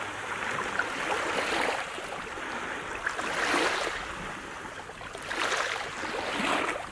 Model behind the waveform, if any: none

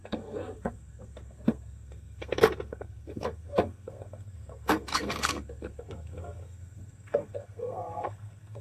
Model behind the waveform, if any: codec, SNAC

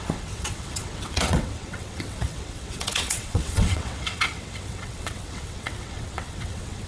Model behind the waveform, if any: vocoder, WaveNeXt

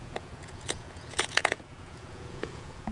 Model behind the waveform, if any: vocoder, Vocos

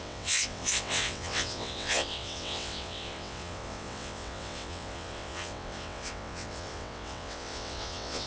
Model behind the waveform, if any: vocoder, WaveNeXt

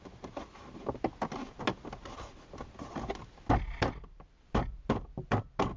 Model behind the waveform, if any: none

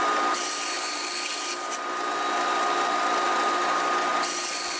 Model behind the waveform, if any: none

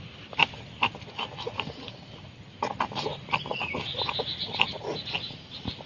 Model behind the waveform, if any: none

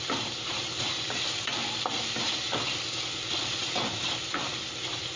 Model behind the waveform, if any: none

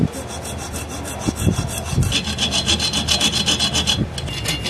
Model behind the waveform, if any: none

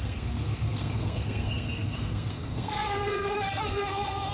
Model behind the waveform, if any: codec, SNAC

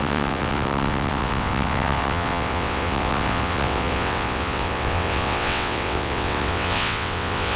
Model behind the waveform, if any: vocoder, WaveNeXt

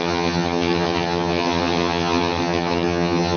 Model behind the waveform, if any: vocoder, HiFi-GAN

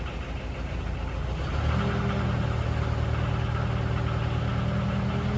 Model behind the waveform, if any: none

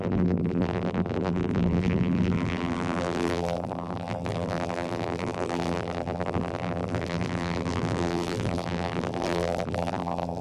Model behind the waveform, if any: vocoder, BigVGAN v2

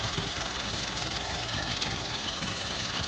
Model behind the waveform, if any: codec, SNAC